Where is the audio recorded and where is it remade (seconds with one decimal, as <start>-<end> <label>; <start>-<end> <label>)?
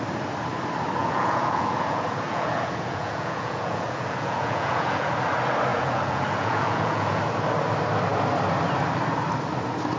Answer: 0.0-1.0 recorded; 1.0-5.1 remade; 5.1-5.7 recorded; 5.7-7.2 remade; 7.2-10.0 recorded